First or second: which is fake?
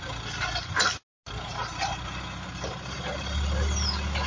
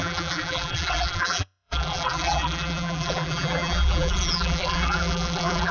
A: second